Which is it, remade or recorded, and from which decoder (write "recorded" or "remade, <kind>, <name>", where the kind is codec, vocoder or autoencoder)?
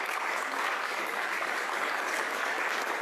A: remade, codec, DAC